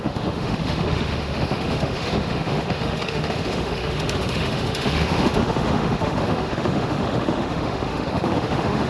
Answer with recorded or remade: remade